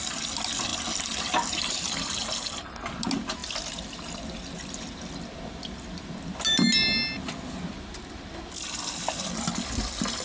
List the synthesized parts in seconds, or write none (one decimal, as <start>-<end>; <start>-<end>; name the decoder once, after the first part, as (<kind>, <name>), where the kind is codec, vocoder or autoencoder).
0.7-1.7 (vocoder, BigVGAN v2); 3.4-8.5